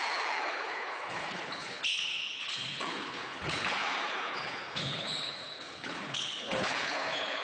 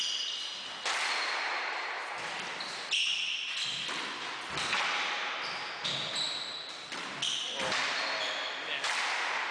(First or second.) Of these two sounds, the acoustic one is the second